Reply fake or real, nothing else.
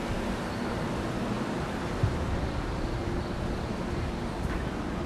real